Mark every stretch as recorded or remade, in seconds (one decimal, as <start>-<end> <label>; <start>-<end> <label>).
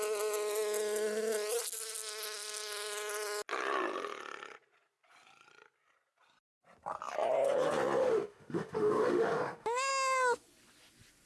0.0-8.0 recorded; 8.0-9.9 remade; 9.9-11.3 recorded